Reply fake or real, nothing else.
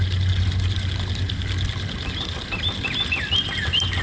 real